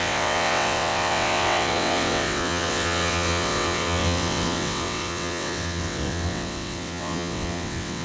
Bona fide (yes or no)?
no